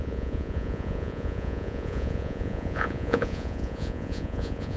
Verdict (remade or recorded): remade